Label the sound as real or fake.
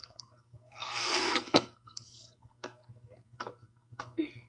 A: fake